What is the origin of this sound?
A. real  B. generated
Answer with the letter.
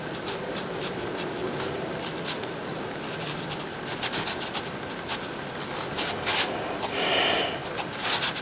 A